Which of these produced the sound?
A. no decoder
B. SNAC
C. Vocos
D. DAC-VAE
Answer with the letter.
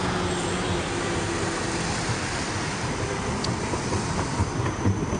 A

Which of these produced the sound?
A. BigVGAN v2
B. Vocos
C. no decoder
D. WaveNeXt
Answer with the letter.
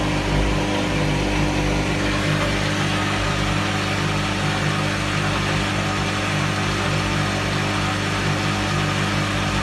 C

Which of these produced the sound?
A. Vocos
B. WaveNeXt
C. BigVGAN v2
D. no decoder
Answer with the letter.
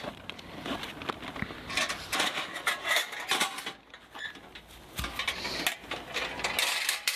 D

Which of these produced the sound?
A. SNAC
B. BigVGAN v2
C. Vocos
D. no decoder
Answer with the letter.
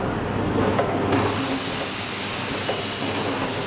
D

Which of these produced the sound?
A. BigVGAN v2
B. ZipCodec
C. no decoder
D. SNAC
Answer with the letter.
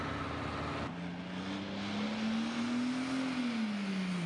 C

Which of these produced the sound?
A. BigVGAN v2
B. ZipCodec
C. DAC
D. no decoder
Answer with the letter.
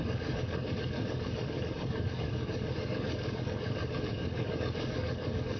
C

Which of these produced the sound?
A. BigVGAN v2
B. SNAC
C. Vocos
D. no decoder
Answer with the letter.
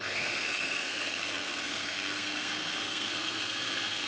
B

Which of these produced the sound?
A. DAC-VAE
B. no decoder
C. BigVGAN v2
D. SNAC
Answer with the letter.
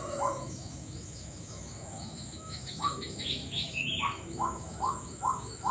A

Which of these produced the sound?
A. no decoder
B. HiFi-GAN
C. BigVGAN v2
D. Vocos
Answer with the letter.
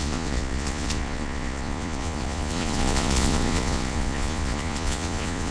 D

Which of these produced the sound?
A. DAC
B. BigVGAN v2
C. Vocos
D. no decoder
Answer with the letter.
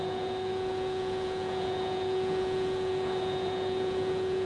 C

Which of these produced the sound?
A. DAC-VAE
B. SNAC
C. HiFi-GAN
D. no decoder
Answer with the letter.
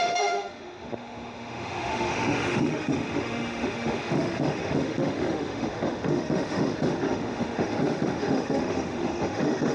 A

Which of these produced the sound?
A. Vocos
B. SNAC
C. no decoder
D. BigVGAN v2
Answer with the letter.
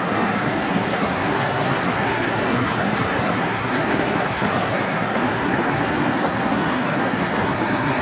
B